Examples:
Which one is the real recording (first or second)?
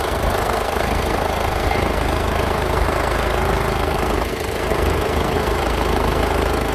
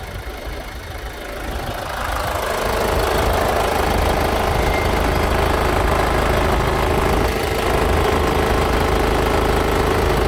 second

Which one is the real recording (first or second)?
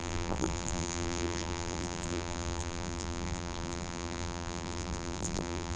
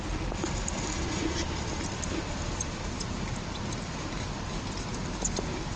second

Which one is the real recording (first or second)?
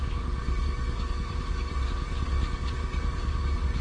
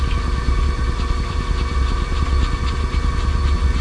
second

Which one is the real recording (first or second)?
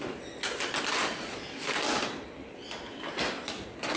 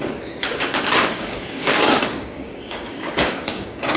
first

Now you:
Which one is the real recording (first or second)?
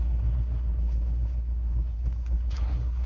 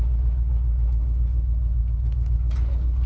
second